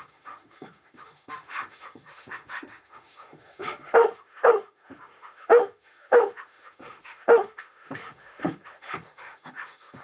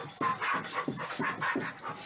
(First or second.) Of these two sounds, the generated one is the first